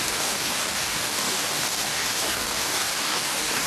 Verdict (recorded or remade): remade